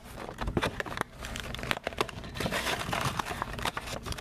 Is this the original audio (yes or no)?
no